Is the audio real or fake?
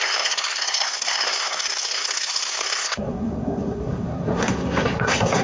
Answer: fake